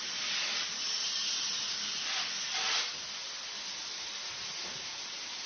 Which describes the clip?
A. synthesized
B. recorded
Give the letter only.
B